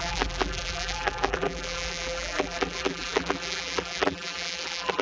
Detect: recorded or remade remade